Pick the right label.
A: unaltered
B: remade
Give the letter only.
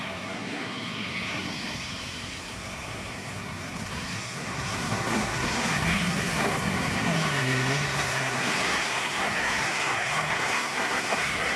B